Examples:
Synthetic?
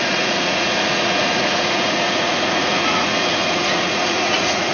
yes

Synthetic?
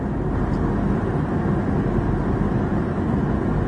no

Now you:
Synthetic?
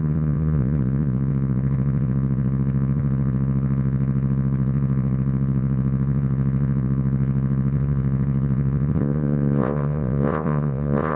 yes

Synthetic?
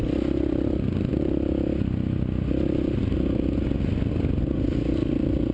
no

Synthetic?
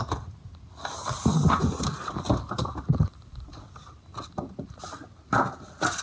no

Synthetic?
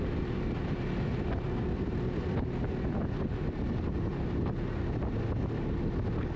no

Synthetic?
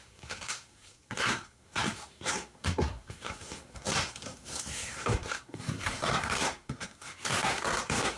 yes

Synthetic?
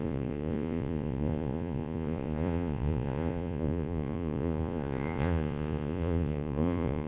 yes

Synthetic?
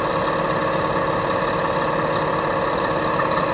no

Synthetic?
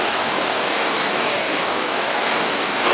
yes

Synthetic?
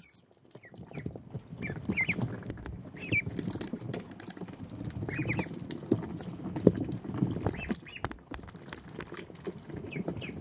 no